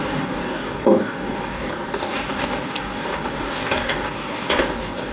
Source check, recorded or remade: remade